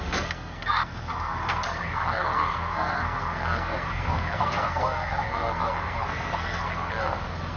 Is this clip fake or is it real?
fake